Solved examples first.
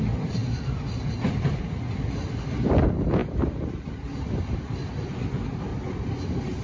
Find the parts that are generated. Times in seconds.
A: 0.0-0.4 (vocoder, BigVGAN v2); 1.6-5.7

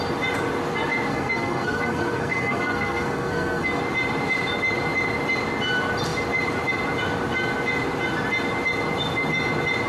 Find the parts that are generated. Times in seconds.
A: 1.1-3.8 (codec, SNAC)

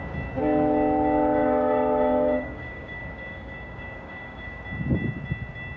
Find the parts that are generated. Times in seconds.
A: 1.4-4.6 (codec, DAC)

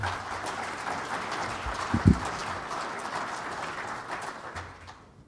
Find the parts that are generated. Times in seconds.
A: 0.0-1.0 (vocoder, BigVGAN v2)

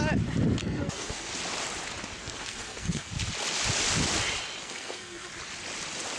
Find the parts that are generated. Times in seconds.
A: 0.6-1.3 (codec, SNAC); 2.2-3.1; 4.6-5.3